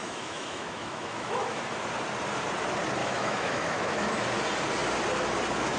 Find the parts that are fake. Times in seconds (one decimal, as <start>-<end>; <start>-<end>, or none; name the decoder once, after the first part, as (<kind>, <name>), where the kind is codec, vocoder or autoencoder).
0.0-1.6 (autoencoder, DAC-VAE); 3.0-4.1